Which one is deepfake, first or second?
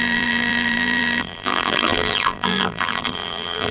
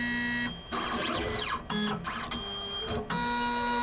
first